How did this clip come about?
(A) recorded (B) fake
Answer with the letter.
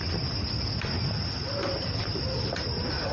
A